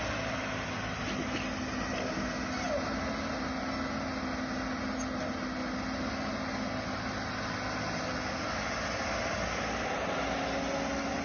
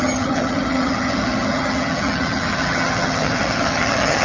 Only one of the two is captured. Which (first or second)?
first